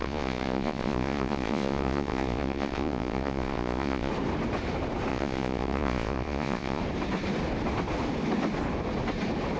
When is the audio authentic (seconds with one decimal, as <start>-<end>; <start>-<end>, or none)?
4.1-5.1; 6.8-9.6